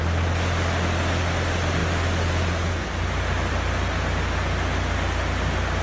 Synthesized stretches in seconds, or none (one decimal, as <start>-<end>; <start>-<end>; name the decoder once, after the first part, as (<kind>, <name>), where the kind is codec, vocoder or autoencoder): none